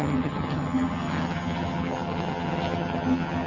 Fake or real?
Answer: fake